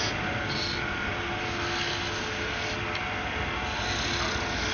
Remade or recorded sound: recorded